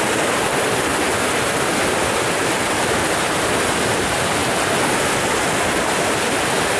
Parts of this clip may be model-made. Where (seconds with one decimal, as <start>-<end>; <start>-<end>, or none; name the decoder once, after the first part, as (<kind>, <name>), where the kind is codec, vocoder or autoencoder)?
none

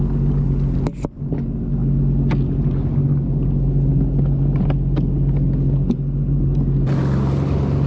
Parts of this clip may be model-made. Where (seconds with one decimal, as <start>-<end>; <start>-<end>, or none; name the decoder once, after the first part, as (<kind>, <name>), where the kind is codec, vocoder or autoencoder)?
none

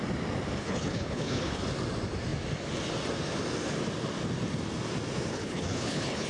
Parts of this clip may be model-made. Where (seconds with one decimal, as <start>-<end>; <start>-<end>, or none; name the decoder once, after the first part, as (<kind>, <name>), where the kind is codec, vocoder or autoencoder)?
0.6-1.6 (codec, HILCodec); 5.3-6.3

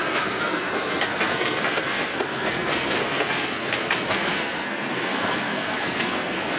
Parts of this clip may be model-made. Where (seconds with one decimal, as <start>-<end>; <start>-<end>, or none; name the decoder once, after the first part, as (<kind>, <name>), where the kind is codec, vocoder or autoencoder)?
0.0-6.6 (codec, SNAC)

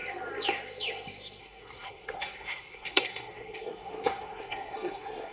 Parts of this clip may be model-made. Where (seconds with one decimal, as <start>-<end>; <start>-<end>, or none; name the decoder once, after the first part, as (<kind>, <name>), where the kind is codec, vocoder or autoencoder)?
1.4-5.3 (codec, SNAC)

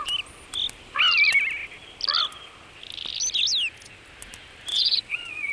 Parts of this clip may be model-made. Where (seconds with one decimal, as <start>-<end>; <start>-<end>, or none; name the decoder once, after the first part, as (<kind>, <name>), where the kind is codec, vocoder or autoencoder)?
4.7-5.5 (vocoder, Vocos)

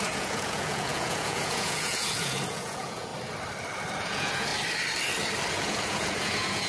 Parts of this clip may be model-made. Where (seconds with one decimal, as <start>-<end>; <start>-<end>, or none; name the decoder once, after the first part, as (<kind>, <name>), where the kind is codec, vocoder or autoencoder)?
0.0-3.1 (vocoder, Vocos); 4.0-4.5; 5.5-6.7